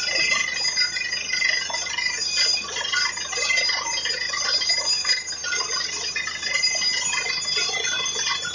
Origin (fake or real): real